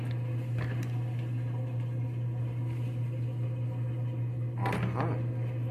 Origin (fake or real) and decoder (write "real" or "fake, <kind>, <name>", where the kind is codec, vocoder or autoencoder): real